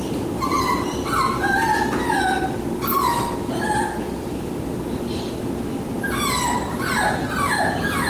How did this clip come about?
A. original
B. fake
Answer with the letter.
A